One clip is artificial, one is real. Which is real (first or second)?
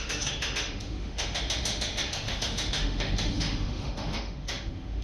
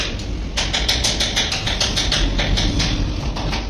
second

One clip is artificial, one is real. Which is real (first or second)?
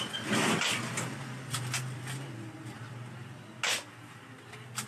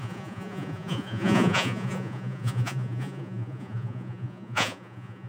first